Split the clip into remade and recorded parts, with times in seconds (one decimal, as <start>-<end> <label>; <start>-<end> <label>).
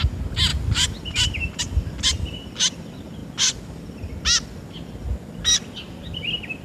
0.0-6.6 recorded